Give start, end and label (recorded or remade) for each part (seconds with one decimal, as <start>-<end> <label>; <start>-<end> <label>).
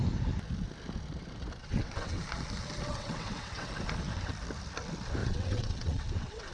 0.0-1.6 recorded; 1.6-2.2 remade; 2.2-2.9 recorded; 2.9-3.7 remade; 3.7-5.2 recorded; 5.2-6.5 remade